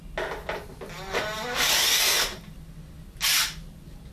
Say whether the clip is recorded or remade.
recorded